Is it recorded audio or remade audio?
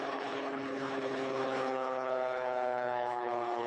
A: remade